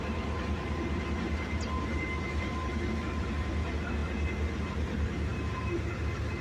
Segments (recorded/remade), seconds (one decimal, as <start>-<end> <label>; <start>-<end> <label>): 0.0-6.4 recorded